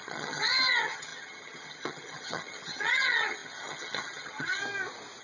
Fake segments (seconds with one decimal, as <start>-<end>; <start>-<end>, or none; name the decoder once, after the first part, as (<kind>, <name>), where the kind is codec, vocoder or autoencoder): 0.0-4.6 (vocoder, HiFi-GAN)